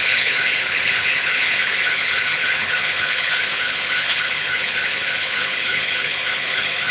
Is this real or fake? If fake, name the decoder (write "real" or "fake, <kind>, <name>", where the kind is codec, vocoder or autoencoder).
fake, codec, HILCodec